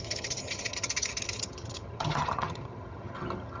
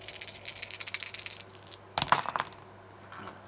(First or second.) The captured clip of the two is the second